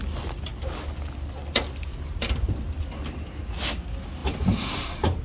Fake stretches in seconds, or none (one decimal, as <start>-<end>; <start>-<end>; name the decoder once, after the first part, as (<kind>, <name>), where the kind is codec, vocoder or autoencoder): none